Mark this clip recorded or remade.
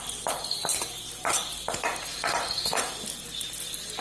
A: recorded